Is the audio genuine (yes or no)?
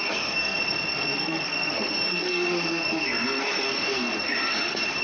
no